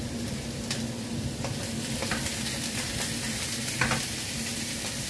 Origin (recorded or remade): recorded